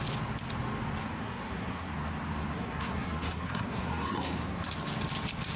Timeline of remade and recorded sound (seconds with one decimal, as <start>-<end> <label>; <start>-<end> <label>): 0.0-1.2 recorded; 1.2-1.9 remade; 1.9-2.5 recorded; 2.5-4.7 remade; 4.7-5.6 recorded